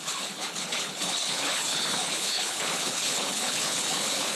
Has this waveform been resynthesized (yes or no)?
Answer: yes